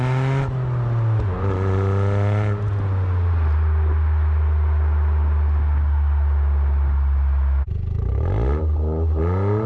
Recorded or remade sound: recorded